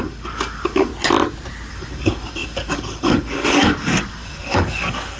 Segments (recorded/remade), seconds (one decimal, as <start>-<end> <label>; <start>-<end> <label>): 0.0-0.9 remade; 0.9-1.7 recorded; 1.7-5.2 remade